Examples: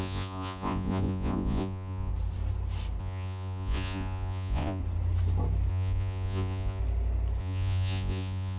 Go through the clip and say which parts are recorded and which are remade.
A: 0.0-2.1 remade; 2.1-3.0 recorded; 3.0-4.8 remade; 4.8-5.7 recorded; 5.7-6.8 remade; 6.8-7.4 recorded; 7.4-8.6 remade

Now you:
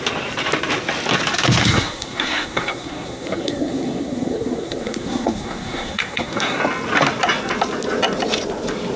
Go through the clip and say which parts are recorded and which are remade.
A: 0.0-1.6 recorded; 1.6-6.6 remade; 6.6-9.0 recorded

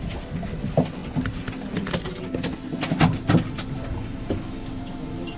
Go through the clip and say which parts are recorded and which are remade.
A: 0.0-5.4 recorded

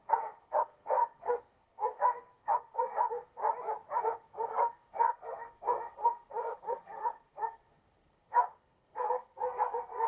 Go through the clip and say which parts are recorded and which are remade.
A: 0.0-3.4 remade; 3.4-4.0 recorded; 4.0-10.1 remade

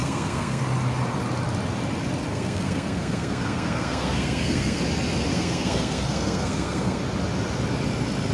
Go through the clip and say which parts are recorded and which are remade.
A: 0.0-0.6 remade; 0.6-2.3 recorded; 2.3-4.8 remade; 4.8-5.3 recorded; 5.3-7.0 remade; 7.0-8.3 recorded

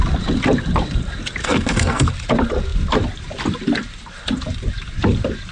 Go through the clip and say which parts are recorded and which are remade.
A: 0.0-1.4 recorded; 1.4-2.1 remade; 2.1-5.5 recorded

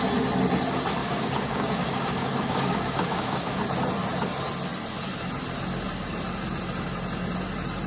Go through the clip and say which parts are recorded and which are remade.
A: 0.0-1.0 recorded; 1.0-3.6 remade; 3.6-7.9 recorded